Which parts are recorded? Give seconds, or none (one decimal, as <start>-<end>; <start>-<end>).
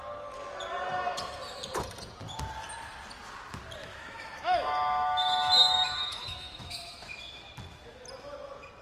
0.0-3.8; 7.5-8.8